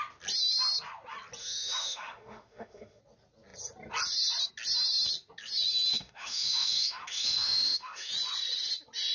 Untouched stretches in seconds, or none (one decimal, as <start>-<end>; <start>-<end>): 0.0-1.4; 3.0-5.9; 8.1-9.1